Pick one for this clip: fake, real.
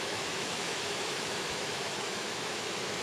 fake